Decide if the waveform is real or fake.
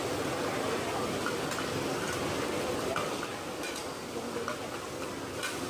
real